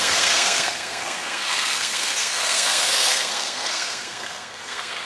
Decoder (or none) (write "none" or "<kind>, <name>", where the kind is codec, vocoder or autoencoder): codec, SNAC